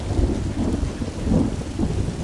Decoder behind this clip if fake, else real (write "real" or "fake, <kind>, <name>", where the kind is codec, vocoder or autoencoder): real